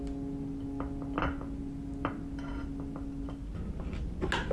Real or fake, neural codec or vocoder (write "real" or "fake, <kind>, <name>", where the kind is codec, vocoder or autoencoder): real